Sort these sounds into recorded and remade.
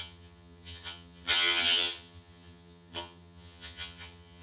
remade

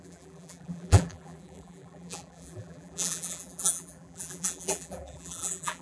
remade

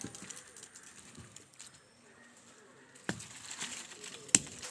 recorded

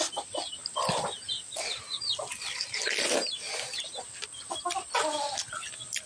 recorded